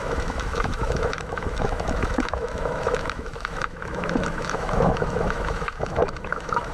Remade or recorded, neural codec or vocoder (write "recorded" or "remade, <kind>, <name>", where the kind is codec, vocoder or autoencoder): remade, autoencoder, DAC-VAE